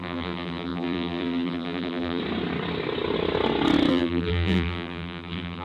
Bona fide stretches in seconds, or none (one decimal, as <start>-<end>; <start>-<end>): 2.2-3.9